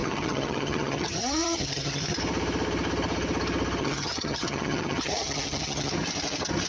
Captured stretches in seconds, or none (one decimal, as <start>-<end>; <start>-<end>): 2.0-3.8; 5.9-6.7